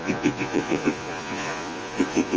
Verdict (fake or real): fake